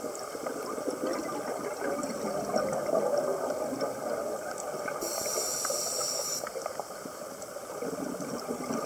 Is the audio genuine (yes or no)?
yes